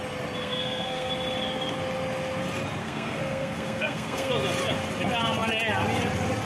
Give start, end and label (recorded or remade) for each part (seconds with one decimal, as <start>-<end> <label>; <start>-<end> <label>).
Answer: 0.0-0.4 recorded; 0.4-1.1 remade; 1.1-2.8 recorded; 2.8-4.3 remade; 4.3-6.5 recorded